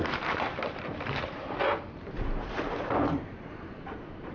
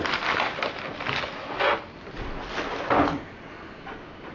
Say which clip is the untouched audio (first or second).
second